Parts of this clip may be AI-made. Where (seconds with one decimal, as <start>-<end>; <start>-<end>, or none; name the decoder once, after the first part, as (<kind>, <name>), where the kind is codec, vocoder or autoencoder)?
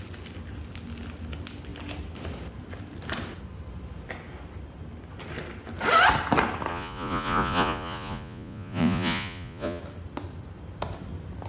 6.7-9.8 (vocoder, Vocos)